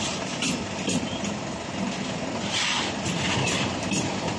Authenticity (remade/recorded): recorded